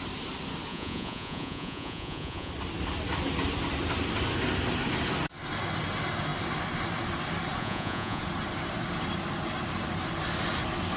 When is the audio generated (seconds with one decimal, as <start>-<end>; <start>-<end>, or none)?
0.7-2.5; 7.6-8.2